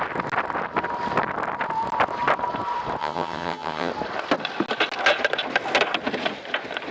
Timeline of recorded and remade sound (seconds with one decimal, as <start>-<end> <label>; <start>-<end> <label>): 0.0-3.0 recorded; 3.0-3.9 remade; 3.9-6.9 recorded